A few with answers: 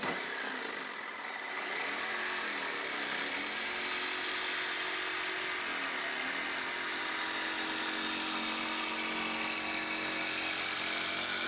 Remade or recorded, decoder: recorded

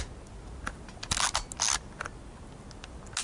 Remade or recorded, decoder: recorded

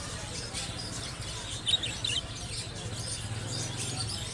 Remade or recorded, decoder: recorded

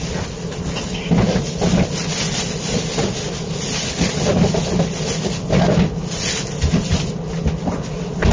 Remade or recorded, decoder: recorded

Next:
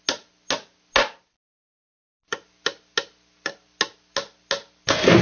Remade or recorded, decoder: recorded